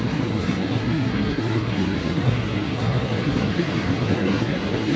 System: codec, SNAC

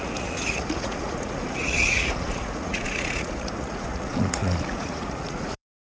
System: vocoder, Vocos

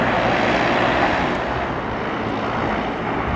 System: none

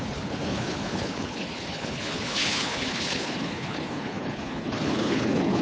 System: codec, HILCodec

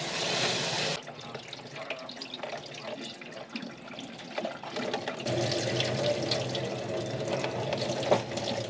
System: none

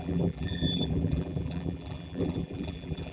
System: vocoder, BigVGAN v2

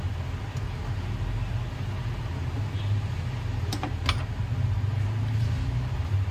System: none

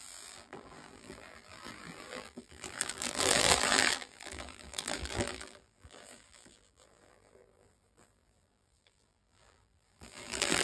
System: vocoder, BigVGAN v2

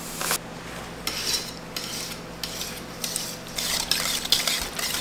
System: none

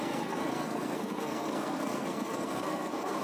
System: codec, SNAC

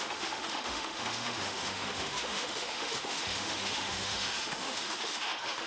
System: autoencoder, DAC-VAE